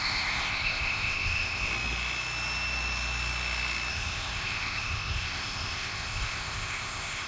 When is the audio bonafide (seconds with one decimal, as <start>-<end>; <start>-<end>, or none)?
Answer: 1.7-3.9